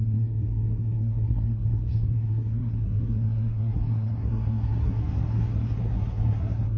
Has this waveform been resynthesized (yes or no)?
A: yes